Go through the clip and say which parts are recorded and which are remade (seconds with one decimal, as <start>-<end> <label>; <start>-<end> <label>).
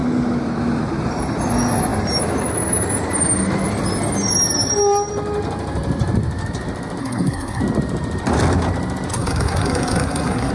0.0-7.0 recorded; 7.0-7.6 remade; 7.6-9.1 recorded; 9.1-10.5 remade